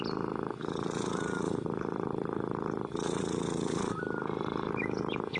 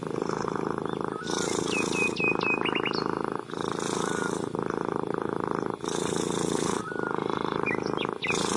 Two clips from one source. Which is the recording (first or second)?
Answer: second